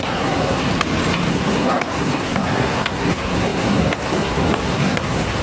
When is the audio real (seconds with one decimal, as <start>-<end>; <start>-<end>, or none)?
0.7-1.3